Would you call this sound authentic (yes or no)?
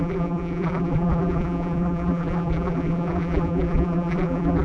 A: no